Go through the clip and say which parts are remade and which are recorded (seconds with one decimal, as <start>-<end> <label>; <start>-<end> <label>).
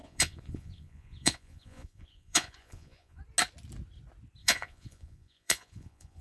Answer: 0.0-3.2 remade; 3.2-4.4 recorded; 4.4-6.2 remade